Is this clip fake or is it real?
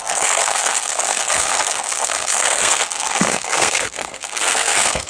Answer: fake